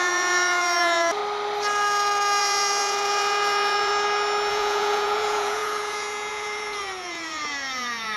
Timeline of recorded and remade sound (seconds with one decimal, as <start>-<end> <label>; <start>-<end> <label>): 0.0-1.2 remade; 1.2-2.4 recorded; 2.4-3.9 remade; 3.9-4.5 recorded; 4.5-8.2 remade